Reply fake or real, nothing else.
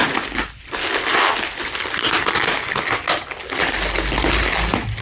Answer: real